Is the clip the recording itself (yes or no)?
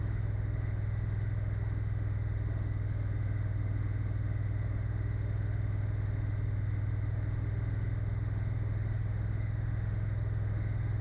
no